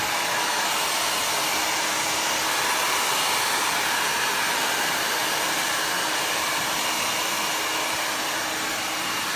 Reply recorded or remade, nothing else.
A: recorded